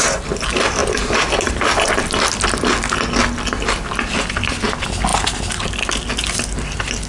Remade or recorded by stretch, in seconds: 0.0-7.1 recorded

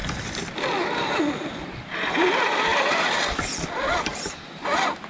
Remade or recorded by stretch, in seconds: 0.0-5.1 recorded